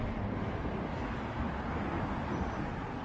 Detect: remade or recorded recorded